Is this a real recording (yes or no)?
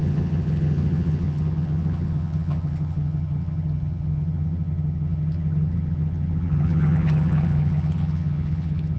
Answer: no